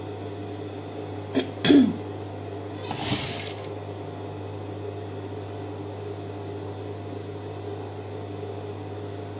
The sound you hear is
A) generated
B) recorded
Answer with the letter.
B